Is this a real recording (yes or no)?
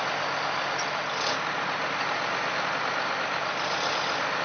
yes